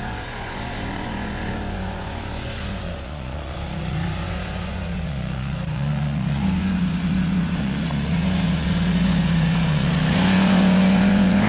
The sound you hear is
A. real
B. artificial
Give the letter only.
B